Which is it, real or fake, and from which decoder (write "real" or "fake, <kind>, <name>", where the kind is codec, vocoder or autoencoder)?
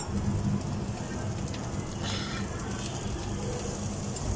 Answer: real